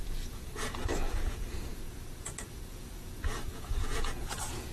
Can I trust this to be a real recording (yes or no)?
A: no